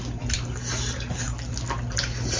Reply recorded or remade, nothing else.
recorded